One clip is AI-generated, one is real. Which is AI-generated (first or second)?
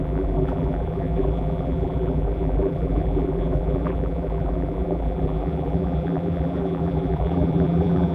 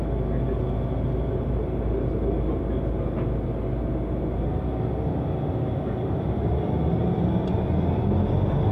first